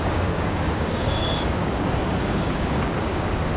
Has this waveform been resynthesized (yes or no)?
yes